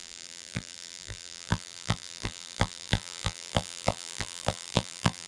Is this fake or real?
fake